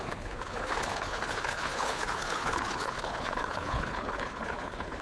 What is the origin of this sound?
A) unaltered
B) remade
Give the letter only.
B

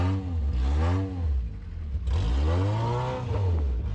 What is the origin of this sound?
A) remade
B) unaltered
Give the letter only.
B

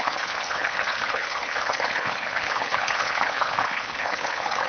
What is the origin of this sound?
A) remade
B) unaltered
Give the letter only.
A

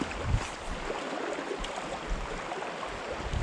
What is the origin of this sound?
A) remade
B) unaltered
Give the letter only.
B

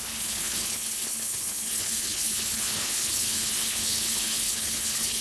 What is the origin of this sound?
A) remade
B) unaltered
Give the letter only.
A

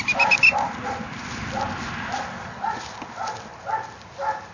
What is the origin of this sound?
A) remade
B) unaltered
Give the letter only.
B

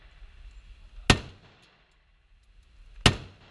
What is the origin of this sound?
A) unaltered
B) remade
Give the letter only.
A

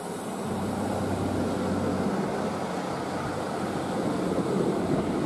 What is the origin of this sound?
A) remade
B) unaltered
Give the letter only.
B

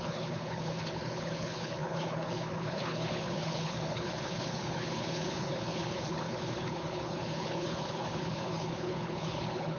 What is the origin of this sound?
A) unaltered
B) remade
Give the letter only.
B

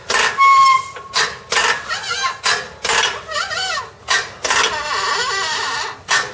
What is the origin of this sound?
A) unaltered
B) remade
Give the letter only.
A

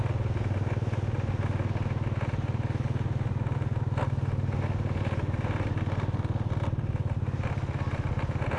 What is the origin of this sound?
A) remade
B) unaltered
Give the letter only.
B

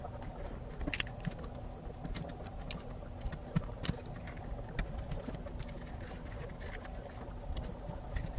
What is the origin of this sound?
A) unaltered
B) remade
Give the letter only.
A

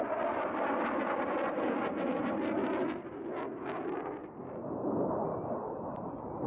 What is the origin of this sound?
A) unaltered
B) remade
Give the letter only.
A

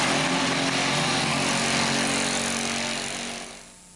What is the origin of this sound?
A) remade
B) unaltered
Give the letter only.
B